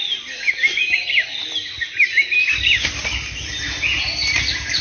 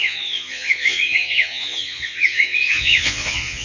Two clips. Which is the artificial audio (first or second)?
second